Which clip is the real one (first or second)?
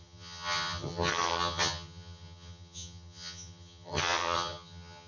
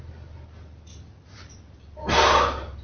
second